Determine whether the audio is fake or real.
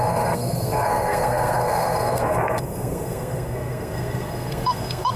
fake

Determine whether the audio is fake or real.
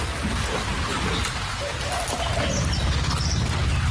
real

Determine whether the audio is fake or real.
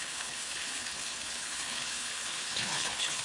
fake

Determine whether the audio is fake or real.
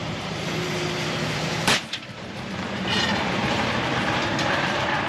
fake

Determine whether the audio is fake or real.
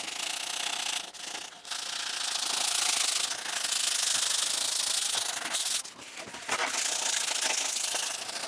real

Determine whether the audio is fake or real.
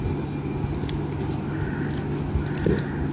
real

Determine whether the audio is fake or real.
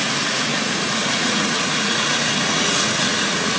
fake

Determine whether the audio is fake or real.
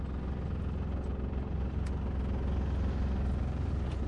real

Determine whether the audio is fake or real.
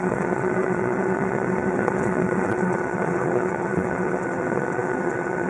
fake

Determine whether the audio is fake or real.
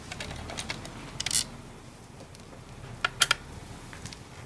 real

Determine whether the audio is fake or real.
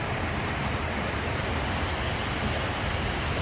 real